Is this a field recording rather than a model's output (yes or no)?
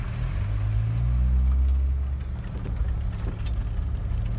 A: yes